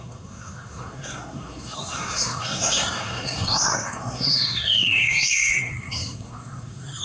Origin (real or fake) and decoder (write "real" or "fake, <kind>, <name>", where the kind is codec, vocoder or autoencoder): fake, codec, SNAC